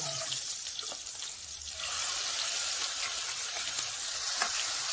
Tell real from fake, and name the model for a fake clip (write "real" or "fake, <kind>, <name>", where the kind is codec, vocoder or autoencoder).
fake, vocoder, BigVGAN v2